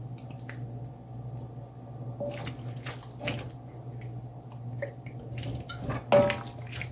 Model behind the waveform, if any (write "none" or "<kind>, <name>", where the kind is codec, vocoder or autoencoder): none